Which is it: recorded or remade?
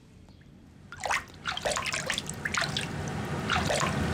recorded